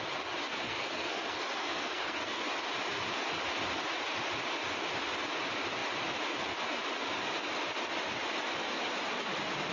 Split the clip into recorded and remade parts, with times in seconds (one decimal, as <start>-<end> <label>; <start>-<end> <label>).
0.0-0.5 recorded; 0.5-2.4 remade; 2.4-9.7 recorded